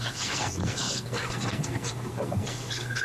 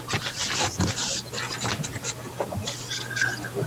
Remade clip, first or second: first